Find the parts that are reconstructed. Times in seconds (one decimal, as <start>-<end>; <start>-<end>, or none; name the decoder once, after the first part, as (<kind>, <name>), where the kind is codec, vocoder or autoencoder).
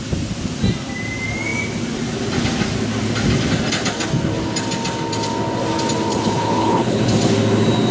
6.1-7.0 (codec, HILCodec)